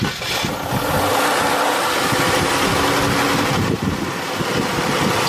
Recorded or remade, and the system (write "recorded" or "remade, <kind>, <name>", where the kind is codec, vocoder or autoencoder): recorded